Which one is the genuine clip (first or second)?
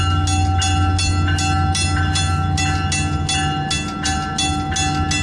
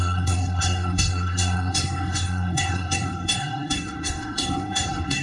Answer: first